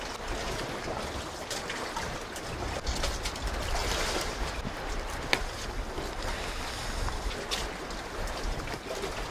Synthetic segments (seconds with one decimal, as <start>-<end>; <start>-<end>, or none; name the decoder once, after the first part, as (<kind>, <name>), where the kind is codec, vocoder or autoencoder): none